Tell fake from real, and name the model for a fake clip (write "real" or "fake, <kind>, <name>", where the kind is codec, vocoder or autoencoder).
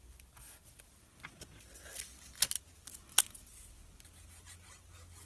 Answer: real